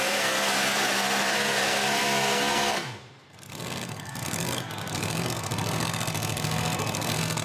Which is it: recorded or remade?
remade